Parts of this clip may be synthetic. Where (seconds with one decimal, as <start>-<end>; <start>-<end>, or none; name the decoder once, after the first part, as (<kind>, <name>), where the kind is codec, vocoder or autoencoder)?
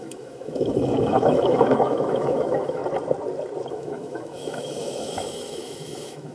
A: 0.0-2.8 (autoencoder, DAC-VAE); 3.7-6.3